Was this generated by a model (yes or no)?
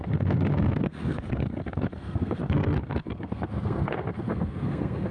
yes